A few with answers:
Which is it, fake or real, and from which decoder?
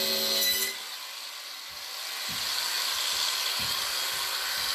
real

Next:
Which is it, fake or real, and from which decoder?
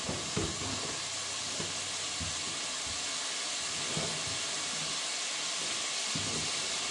real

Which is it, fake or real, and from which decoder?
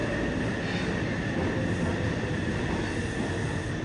real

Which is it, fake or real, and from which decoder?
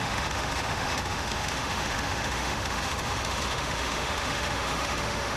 fake, autoencoder, DAC-VAE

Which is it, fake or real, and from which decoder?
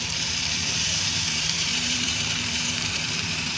fake, vocoder, BigVGAN v2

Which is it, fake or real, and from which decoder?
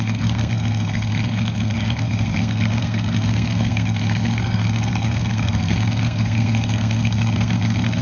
fake, codec, SNAC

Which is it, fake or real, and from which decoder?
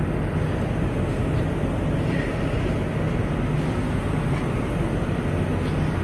real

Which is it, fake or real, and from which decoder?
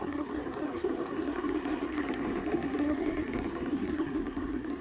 fake, codec, SNAC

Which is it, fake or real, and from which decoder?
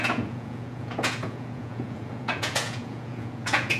fake, vocoder, Vocos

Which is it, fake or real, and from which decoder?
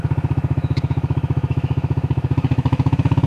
fake, autoencoder, DAC-VAE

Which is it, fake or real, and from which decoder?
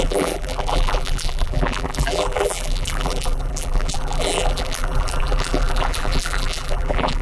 fake, vocoder, BigVGAN v2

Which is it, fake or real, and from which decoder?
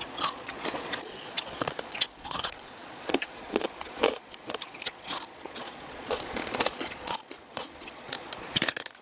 fake, vocoder, Vocos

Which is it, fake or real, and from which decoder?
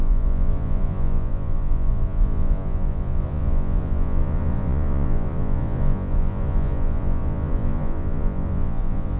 fake, vocoder, Vocos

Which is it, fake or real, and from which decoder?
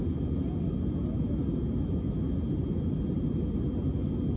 real